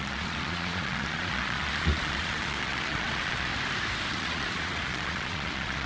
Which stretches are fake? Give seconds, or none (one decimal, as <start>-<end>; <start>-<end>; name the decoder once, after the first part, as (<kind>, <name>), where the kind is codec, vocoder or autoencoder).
0.0-3.5 (vocoder, Vocos); 4.1-5.9